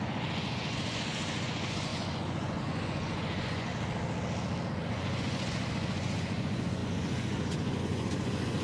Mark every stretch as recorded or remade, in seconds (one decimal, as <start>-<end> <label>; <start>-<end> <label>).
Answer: 0.0-3.7 remade; 3.7-4.7 recorded; 4.7-8.6 remade